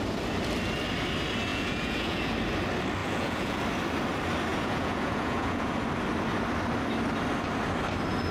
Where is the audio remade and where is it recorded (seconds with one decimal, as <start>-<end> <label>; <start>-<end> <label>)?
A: 0.0-1.5 recorded; 1.5-2.3 remade; 2.3-3.0 recorded; 3.0-3.6 remade; 3.6-4.5 recorded; 4.5-5.7 remade; 5.7-8.3 recorded